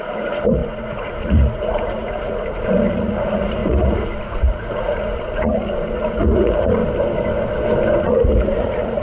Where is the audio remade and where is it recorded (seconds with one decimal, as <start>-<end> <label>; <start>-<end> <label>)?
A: 0.0-6.8 remade; 6.8-8.0 recorded; 8.0-9.0 remade